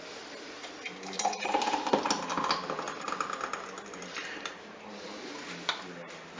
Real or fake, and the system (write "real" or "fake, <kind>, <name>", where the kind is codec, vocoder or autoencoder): real